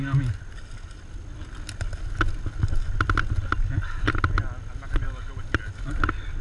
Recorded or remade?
recorded